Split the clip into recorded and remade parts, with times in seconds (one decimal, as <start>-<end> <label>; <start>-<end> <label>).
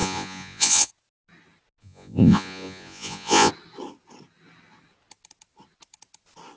0.0-0.9 remade; 0.9-1.8 recorded; 1.8-3.5 remade; 3.5-6.6 recorded